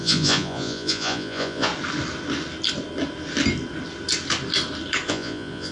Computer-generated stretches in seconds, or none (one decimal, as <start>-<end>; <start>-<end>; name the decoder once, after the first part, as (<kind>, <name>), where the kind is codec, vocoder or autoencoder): 0.0-1.7 (vocoder, Vocos); 5.1-5.7